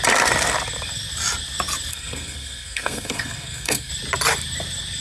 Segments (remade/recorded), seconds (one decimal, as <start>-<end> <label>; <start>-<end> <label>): 0.0-1.9 recorded; 1.9-3.9 remade; 3.9-5.0 recorded